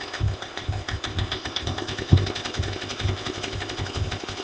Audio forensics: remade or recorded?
remade